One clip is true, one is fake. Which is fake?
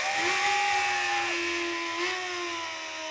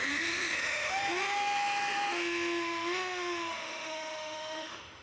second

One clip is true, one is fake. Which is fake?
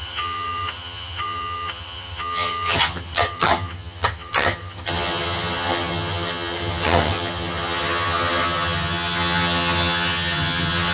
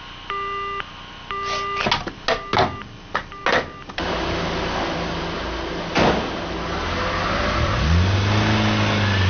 first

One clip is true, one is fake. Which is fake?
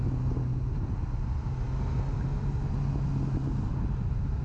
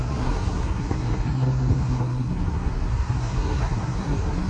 second